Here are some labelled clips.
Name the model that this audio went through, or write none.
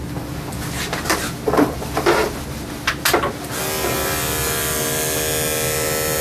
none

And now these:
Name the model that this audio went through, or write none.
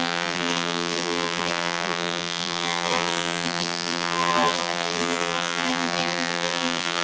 vocoder, BigVGAN v2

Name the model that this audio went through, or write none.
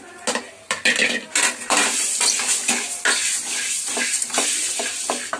none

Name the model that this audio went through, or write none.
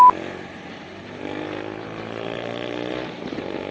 vocoder, BigVGAN v2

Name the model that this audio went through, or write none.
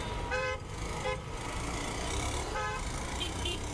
vocoder, BigVGAN v2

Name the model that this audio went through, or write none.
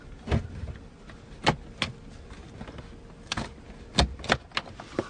none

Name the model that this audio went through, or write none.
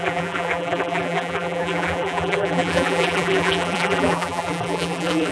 vocoder, BigVGAN v2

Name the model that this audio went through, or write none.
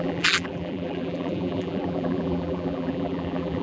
vocoder, BigVGAN v2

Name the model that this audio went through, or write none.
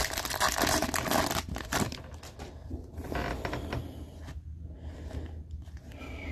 none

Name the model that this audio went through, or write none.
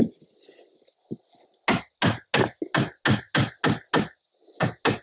none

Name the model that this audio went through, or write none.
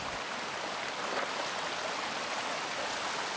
none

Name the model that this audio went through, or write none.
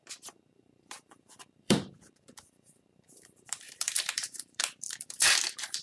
vocoder, BigVGAN v2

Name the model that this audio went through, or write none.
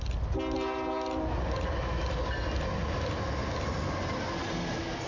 none